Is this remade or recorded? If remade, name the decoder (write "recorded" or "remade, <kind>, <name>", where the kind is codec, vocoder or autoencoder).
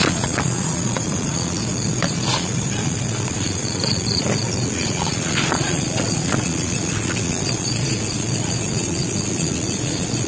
remade, vocoder, Vocos